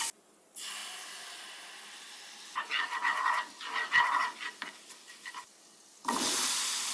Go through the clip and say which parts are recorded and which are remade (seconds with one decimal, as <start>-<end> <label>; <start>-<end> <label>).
0.0-6.9 recorded